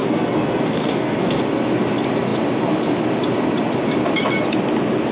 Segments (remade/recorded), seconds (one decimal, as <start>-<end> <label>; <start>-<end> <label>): 0.0-1.4 remade; 1.4-5.1 recorded

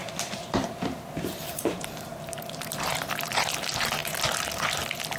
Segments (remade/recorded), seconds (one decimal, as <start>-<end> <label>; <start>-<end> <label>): 0.0-3.1 remade; 3.1-5.2 recorded

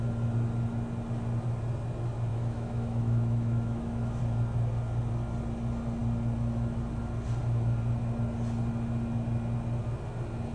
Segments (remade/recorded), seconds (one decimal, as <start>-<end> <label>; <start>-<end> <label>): 0.0-2.3 recorded; 2.3-4.2 remade; 4.2-10.5 recorded

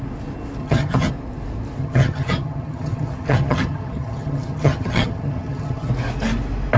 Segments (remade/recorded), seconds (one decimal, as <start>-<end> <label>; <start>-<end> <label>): 0.0-0.6 recorded; 0.6-1.1 remade; 1.1-1.8 recorded; 1.8-5.9 remade; 5.9-6.8 recorded

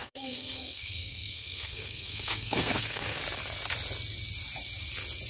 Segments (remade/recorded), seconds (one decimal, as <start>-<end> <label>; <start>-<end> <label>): 0.0-3.2 remade; 3.2-5.3 recorded